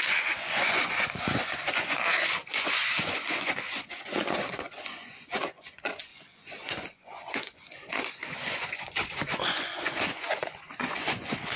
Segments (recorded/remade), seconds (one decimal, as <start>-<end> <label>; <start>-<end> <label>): 0.0-11.6 remade